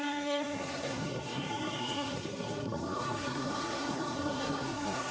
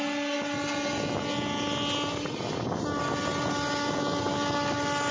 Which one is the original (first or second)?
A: second